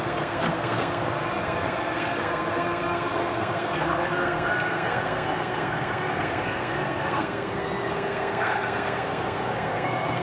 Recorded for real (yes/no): no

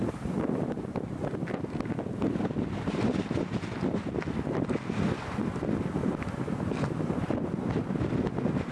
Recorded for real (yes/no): yes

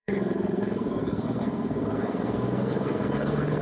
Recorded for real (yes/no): no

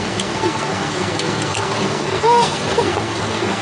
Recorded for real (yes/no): no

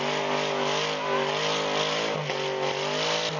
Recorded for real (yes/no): yes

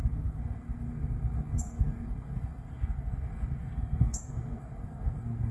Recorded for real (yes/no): no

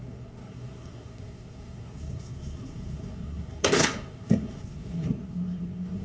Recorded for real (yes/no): no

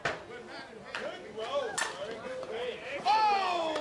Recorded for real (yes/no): yes